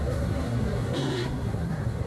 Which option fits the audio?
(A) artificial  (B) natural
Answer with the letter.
A